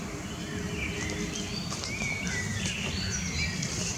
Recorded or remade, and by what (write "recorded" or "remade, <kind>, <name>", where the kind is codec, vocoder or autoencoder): recorded